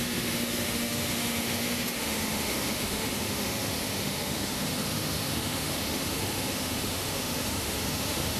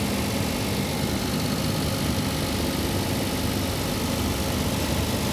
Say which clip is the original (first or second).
second